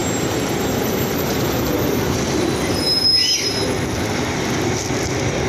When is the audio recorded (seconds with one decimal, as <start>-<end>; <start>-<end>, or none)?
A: 2.8-5.5